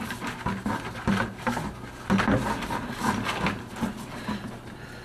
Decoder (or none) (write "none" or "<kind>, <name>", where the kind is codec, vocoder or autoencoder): none